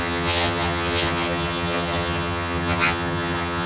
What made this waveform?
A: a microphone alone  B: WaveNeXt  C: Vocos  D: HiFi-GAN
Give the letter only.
D